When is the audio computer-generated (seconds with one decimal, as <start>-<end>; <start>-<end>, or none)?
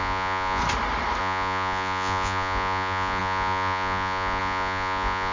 0.0-0.6; 1.2-5.3